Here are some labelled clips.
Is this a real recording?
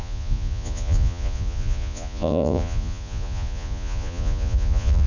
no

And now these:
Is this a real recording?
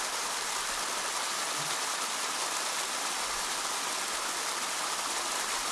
yes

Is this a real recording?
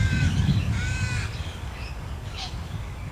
no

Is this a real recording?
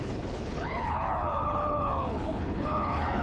no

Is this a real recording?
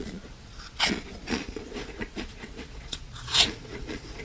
no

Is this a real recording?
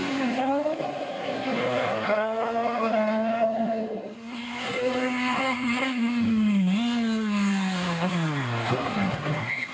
no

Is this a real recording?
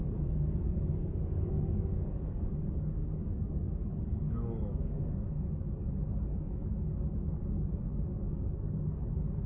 no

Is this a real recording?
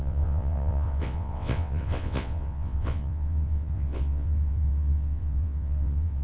no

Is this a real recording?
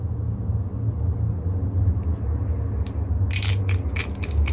yes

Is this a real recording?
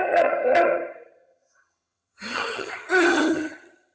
no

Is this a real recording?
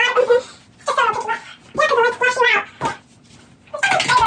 yes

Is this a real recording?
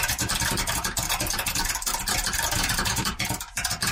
no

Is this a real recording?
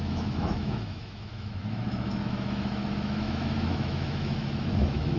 no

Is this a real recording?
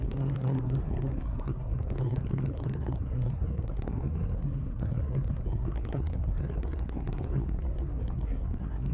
no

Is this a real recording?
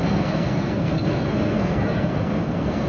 no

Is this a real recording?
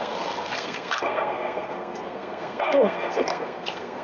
no